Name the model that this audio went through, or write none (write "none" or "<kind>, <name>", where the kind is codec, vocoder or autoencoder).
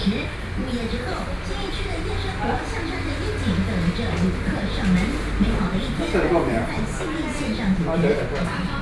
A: none